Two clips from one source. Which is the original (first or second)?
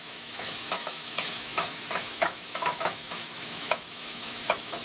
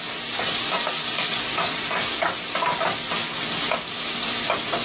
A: second